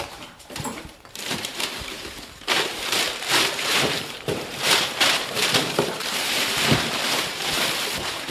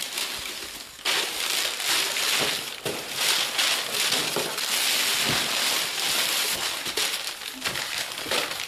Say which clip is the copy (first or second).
first